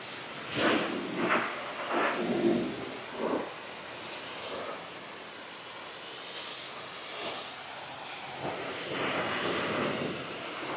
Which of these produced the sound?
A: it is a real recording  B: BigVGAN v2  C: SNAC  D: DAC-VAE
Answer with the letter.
A